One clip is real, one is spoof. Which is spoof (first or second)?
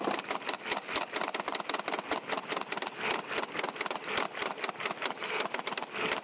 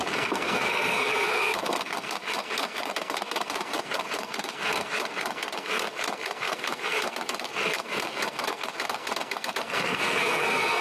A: second